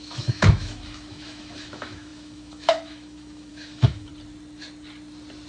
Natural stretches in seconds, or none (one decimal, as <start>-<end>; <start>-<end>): 4.1-5.5